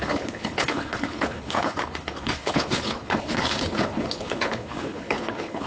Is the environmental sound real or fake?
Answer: fake